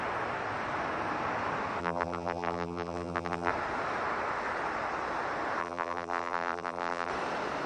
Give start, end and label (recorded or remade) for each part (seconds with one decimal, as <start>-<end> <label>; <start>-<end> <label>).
0.0-1.8 recorded; 1.8-3.5 remade; 3.5-5.6 recorded; 5.6-7.1 remade; 7.1-7.7 recorded